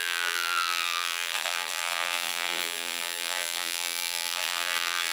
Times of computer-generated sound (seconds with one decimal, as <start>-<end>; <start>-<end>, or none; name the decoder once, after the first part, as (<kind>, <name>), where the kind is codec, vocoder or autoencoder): 0.0-5.1 (vocoder, BigVGAN v2)